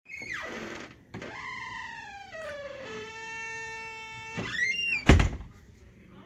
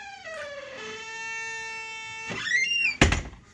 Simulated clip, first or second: first